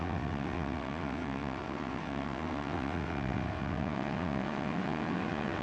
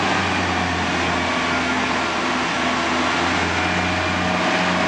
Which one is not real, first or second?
first